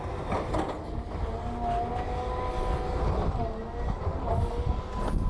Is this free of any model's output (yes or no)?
yes